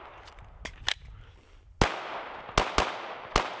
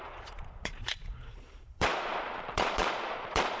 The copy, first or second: second